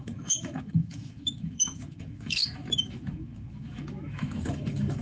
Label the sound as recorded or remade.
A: remade